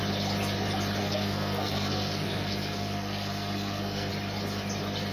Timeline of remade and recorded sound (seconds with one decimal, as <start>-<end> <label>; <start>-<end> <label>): 0.0-1.0 recorded; 1.0-4.1 remade; 4.1-5.1 recorded